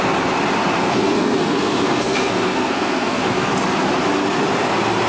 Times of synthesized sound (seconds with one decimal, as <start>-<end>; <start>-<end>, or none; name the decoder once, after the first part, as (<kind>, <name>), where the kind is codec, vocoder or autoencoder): 0.8-3.5 (codec, SNAC)